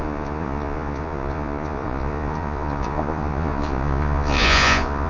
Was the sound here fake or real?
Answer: fake